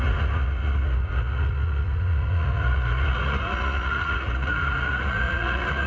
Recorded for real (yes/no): no